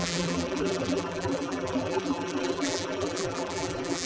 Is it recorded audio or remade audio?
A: remade